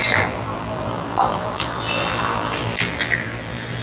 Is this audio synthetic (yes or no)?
yes